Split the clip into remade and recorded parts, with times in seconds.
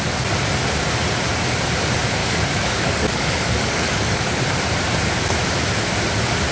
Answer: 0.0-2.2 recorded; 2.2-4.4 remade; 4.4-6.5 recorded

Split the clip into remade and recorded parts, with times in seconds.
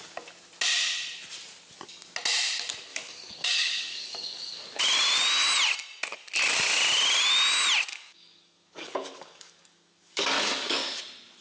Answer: 0.0-2.9 recorded; 2.9-4.8 remade; 4.8-7.9 recorded; 7.9-11.0 remade; 11.0-11.4 recorded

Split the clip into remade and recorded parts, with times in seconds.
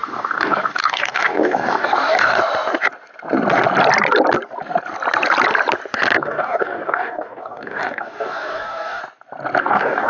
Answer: 0.0-2.4 remade; 2.4-6.2 recorded; 6.2-9.0 remade; 9.0-9.6 recorded; 9.6-10.1 remade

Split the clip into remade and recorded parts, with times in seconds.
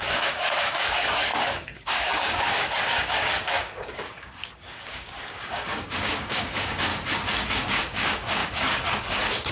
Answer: 0.0-6.9 remade; 6.9-7.5 recorded; 7.5-9.5 remade